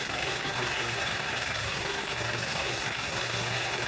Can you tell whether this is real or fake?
fake